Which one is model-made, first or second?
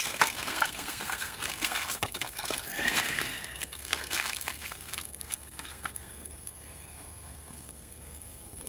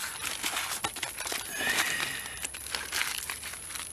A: first